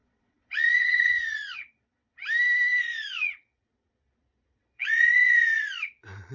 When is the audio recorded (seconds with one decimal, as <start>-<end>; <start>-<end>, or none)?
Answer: 2.2-2.8